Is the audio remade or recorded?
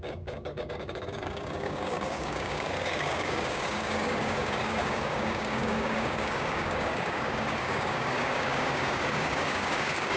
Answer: remade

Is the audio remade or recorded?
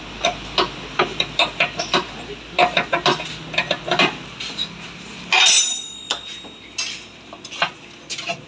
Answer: recorded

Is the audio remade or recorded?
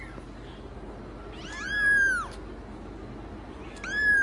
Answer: recorded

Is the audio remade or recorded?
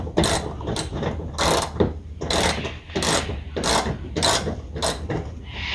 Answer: recorded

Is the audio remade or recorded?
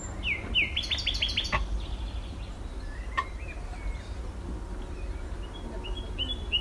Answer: recorded